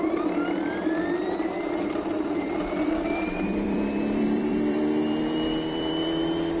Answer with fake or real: fake